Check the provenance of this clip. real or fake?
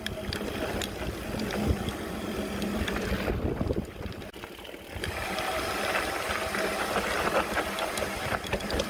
real